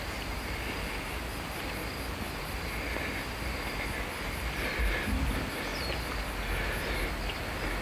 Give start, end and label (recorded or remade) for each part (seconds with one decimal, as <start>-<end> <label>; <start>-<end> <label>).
0.0-7.8 recorded